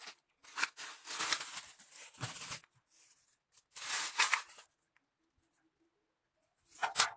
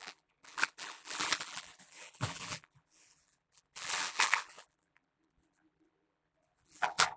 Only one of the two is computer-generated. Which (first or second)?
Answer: second